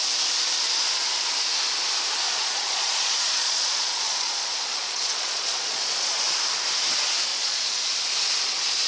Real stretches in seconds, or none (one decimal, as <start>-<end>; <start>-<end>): 0.0-2.3; 6.2-7.3; 7.8-8.9